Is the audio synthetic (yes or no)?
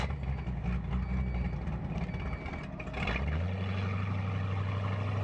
no